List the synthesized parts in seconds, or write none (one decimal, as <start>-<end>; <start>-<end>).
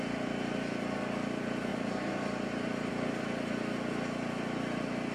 1.7-2.9